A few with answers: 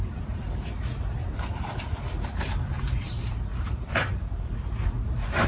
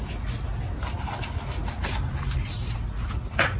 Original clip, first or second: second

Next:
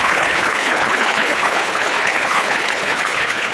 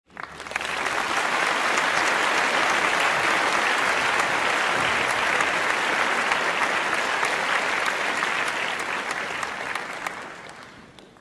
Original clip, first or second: second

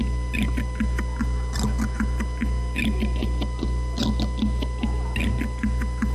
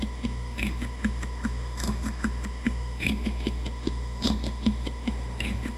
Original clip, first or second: first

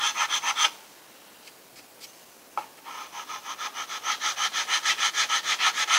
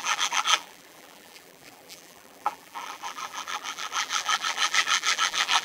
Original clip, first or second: first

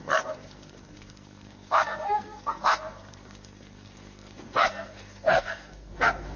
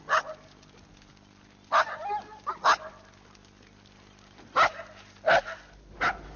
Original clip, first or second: second